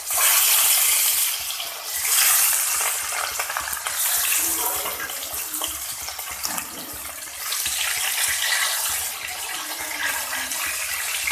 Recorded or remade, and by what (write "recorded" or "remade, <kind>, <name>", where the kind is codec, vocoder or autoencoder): recorded